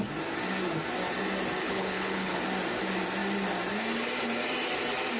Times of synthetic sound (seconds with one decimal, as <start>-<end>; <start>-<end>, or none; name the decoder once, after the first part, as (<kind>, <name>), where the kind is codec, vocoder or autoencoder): 1.6-2.4 (codec, HILCodec)